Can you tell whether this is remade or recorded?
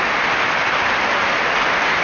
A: recorded